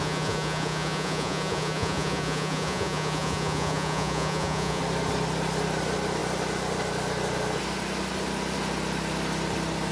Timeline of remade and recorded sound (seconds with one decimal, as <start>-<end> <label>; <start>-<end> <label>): 0.0-4.8 remade; 4.8-9.9 recorded